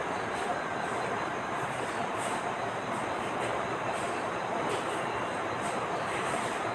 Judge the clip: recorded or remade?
remade